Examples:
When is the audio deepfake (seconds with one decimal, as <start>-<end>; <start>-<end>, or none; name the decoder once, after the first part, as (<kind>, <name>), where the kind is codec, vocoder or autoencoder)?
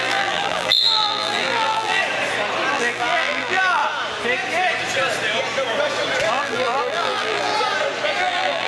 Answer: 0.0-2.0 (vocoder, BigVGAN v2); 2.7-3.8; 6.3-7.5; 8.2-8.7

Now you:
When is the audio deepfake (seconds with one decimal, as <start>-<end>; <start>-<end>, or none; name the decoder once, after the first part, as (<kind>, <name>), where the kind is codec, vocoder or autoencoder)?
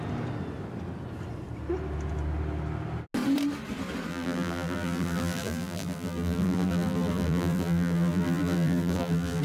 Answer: 4.1-9.4 (vocoder, BigVGAN v2)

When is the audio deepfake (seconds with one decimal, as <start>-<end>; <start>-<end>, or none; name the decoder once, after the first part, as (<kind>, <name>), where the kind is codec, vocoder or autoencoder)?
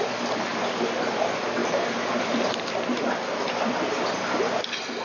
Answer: 1.6-4.6 (vocoder, BigVGAN v2)